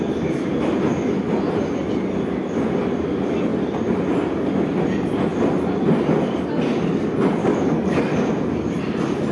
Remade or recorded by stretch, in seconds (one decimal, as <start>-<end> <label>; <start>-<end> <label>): 0.0-7.4 recorded; 7.4-8.0 remade; 8.0-9.3 recorded